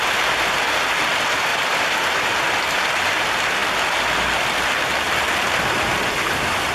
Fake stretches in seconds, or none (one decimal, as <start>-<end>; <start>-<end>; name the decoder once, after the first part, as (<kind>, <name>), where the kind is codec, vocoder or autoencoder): none

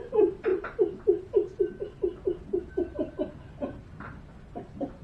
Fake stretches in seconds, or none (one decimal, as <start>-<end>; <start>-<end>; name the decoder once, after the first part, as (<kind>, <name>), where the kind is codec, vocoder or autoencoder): none

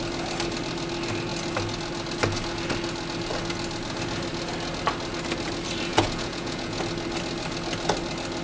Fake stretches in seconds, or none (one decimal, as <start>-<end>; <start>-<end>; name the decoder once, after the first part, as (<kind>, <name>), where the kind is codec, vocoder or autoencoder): 5.9-6.8 (vocoder, Vocos)

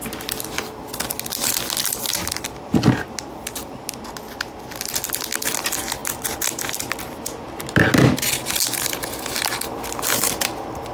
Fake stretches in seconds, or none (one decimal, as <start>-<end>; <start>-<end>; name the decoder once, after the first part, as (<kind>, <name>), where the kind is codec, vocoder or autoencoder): none

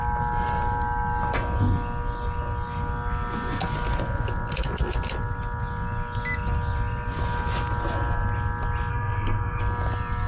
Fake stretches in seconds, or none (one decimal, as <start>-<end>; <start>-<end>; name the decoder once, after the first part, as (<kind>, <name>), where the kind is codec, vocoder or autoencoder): 8.9-9.6 (codec, SNAC)

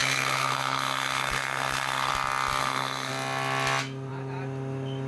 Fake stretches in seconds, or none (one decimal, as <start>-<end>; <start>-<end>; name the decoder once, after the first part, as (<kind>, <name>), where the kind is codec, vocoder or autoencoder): 0.0-2.1 (codec, SNAC); 2.6-3.1